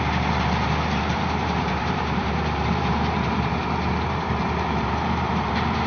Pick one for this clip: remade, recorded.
remade